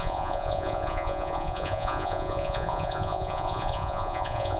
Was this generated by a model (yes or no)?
yes